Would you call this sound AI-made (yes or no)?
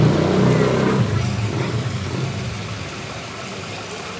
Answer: no